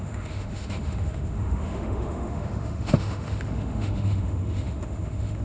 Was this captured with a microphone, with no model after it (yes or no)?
no